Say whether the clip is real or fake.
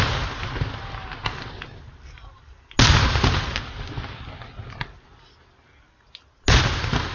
real